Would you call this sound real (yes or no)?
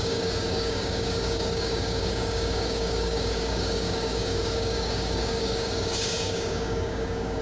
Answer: no